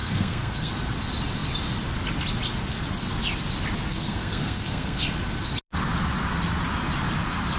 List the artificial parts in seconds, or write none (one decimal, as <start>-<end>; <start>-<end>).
0.0-0.7; 3.9-5.1